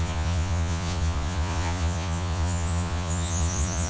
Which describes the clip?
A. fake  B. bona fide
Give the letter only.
A